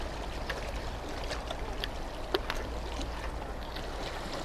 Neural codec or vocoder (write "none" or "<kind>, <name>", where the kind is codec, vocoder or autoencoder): none